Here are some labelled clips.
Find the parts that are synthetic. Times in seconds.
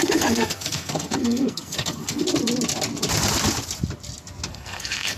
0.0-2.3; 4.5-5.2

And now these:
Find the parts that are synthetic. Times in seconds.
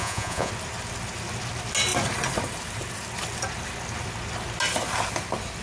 0.0-0.5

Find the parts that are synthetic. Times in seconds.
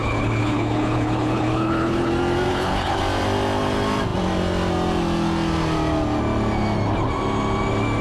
0.0-2.1; 2.5-3.0